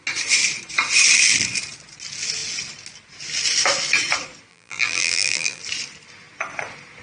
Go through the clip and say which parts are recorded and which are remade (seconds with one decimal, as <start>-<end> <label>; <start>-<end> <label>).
0.0-4.5 recorded; 4.5-5.6 remade; 5.6-7.0 recorded